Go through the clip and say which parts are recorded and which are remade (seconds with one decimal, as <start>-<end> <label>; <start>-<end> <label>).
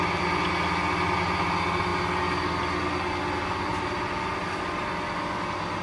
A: 0.0-5.8 recorded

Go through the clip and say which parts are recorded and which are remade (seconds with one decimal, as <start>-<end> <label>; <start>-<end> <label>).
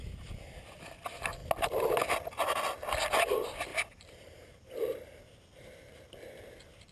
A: 0.0-3.7 recorded; 3.7-5.2 remade; 5.2-6.9 recorded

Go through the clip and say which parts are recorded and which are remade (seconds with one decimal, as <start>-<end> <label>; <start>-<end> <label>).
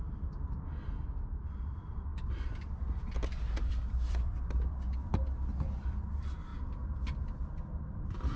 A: 0.0-2.1 recorded; 2.1-5.1 remade; 5.1-8.4 recorded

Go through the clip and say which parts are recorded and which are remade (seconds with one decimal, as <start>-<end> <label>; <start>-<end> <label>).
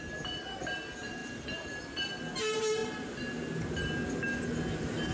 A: 0.0-1.2 recorded; 1.2-1.8 remade; 1.8-5.1 recorded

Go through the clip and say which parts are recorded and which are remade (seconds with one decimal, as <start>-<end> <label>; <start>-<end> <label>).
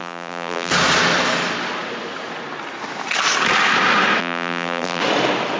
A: 0.0-0.7 remade; 0.7-4.2 recorded; 4.2-5.0 remade; 5.0-5.6 recorded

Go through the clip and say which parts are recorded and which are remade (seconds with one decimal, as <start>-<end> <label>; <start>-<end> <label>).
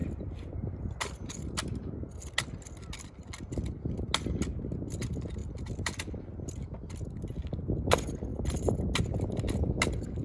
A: 0.0-0.9 remade; 0.9-5.4 recorded; 5.4-6.2 remade; 6.2-10.2 recorded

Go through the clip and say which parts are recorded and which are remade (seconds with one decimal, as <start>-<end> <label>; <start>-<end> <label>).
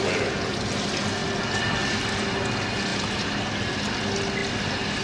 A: 0.0-2.9 recorded; 2.9-3.4 remade; 3.4-5.0 recorded